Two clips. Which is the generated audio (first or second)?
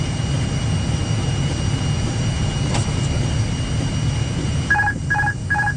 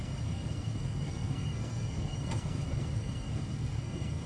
second